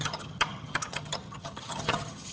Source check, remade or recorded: remade